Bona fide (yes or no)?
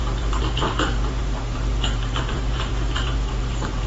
no